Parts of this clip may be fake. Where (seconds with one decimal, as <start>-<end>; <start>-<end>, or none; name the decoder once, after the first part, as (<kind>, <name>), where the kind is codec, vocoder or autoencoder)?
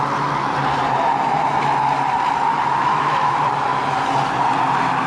2.8-3.3 (autoencoder, DAC-VAE)